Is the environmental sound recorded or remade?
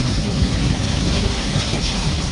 remade